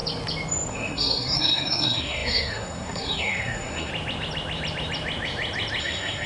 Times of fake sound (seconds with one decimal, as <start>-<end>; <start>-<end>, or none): 0.7-3.9; 5.8-6.3